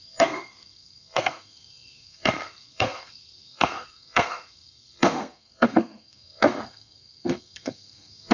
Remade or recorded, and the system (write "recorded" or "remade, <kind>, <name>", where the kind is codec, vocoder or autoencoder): remade, codec, SNAC